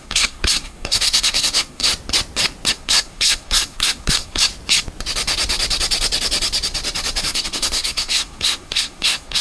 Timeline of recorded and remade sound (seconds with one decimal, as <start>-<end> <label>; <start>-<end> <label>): 0.0-1.9 remade; 1.9-2.7 recorded; 2.7-4.5 remade; 4.5-7.2 recorded; 7.2-9.4 remade